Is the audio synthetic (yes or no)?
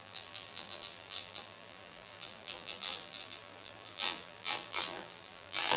yes